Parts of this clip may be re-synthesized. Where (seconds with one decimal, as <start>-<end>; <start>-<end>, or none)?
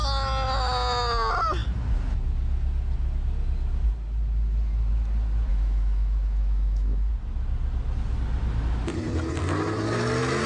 5.5-7.1